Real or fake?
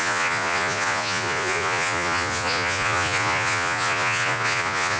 fake